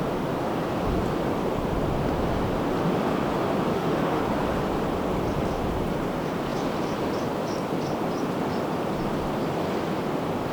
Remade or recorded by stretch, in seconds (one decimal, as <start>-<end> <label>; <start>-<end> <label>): 0.0-3.7 recorded; 3.7-4.2 remade; 4.2-10.5 recorded